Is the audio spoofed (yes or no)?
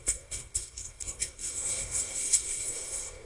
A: yes